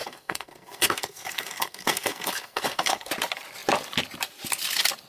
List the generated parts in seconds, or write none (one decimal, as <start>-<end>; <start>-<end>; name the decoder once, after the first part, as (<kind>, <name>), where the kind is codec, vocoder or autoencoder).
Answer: 0.0-3.1 (codec, SNAC)